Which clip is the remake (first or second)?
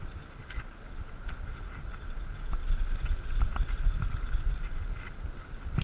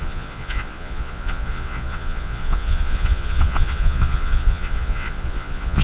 second